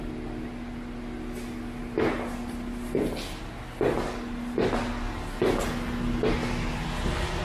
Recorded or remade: recorded